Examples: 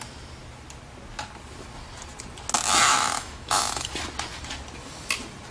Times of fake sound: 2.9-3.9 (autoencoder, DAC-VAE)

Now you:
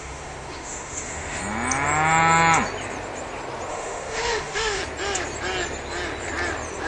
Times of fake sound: 0.0-1.4 (autoencoder, DAC-VAE); 3.7-4.8

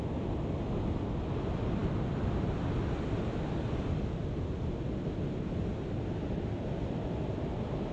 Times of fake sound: none

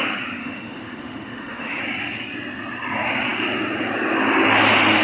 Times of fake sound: 0.4-1.8 (autoencoder, DAC-VAE)

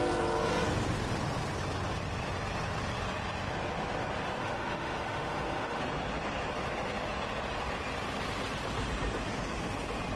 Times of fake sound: 4.4-5.8 (autoencoder, DAC-VAE)

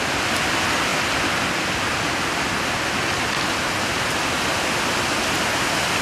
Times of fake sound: none